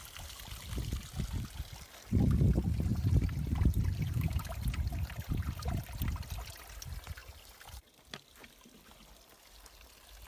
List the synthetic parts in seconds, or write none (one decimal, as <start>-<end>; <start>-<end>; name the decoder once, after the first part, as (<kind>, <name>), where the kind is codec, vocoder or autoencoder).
2.9-5.5 (vocoder, BigVGAN v2)